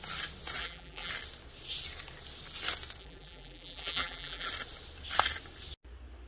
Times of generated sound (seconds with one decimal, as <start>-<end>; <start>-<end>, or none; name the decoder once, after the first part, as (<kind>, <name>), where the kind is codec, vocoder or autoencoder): 0.6-1.1 (vocoder, BigVGAN v2); 3.0-4.5